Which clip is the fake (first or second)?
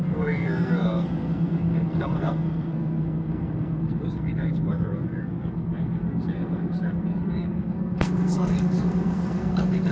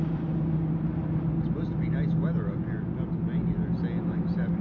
first